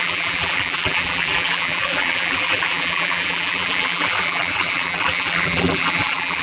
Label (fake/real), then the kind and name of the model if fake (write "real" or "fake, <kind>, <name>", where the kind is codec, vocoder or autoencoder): fake, vocoder, BigVGAN v2